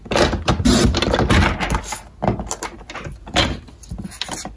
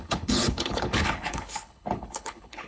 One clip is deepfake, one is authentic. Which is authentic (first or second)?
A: first